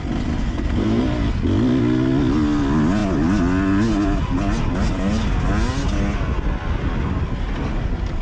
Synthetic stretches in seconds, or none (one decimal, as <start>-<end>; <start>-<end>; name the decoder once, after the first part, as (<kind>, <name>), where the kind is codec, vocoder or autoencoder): 0.4-1.0 (codec, SNAC)